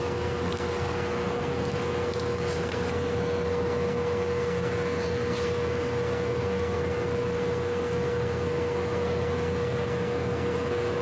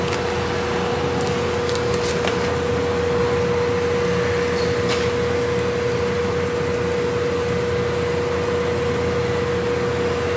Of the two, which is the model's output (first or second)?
first